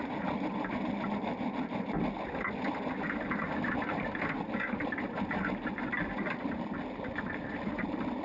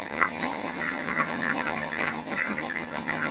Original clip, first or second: first